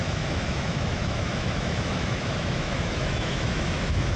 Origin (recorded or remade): remade